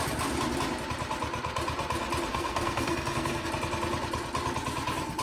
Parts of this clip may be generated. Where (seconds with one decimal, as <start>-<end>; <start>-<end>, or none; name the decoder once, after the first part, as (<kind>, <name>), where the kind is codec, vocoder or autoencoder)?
2.3-3.5 (codec, SNAC)